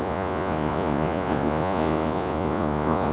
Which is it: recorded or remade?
remade